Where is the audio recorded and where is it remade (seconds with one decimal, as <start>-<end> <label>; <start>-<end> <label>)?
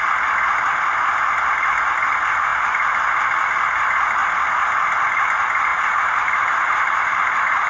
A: 0.0-5.7 recorded; 5.7-7.7 remade